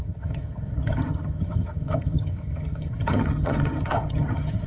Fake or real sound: fake